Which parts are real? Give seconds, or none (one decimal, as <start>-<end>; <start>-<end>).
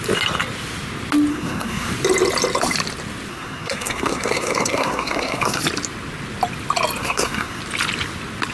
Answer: 0.0-1.3; 1.9-3.3; 5.6-7.0; 7.6-8.5